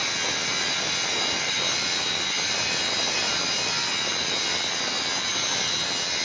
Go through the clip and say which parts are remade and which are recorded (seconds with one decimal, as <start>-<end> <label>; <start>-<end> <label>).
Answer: 0.0-6.2 recorded

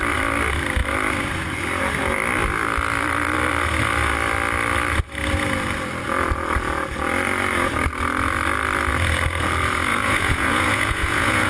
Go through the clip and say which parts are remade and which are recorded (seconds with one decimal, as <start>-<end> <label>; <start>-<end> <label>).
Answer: 0.0-9.9 recorded; 9.9-11.5 remade

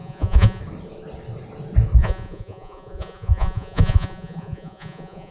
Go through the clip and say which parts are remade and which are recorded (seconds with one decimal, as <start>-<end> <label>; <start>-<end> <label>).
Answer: 0.0-0.6 remade; 0.6-2.0 recorded; 2.0-5.3 remade

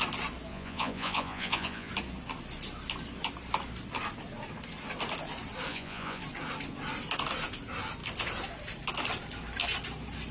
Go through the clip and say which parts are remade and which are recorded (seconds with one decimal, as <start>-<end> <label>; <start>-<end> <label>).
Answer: 0.0-0.5 recorded; 0.5-1.9 remade; 1.9-5.7 recorded; 5.7-6.2 remade; 6.2-10.3 recorded